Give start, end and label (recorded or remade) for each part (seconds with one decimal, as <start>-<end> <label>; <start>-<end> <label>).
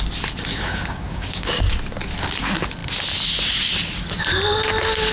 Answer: 0.0-0.5 recorded; 0.5-1.6 remade; 1.6-5.1 recorded